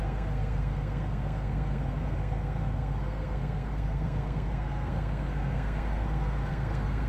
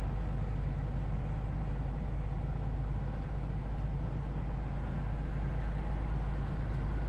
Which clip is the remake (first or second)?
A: first